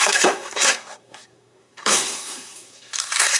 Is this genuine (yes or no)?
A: no